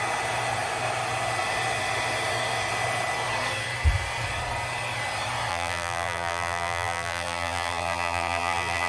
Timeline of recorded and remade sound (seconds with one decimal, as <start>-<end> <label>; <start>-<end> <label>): 0.0-5.5 recorded; 5.5-8.9 remade